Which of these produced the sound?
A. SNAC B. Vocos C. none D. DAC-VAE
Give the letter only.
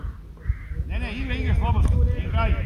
C